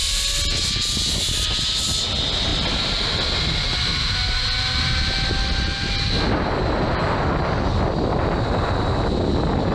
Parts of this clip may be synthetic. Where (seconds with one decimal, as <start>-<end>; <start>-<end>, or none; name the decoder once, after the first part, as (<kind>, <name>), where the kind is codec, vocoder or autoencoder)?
none